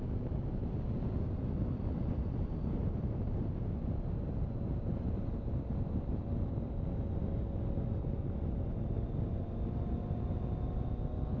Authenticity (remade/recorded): recorded